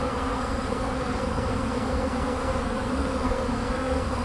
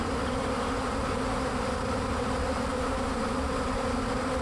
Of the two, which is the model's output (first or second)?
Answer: first